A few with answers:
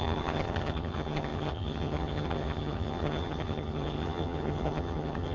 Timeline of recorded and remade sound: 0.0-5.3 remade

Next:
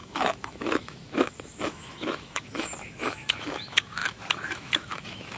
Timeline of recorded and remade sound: 0.0-5.4 remade

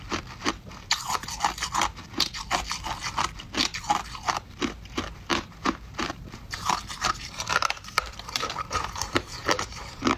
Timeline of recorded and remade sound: 0.0-5.3 recorded; 5.3-10.2 remade

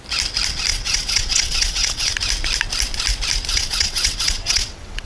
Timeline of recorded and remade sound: 0.0-0.7 recorded; 0.7-2.1 remade; 2.1-3.5 recorded; 3.5-5.1 remade